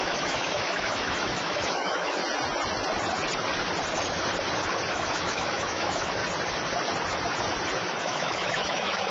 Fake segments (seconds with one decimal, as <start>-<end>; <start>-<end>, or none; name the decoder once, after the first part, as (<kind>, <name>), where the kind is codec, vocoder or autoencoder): 0.0-2.2 (autoencoder, DAC-VAE); 4.9-6.2; 8.0-9.1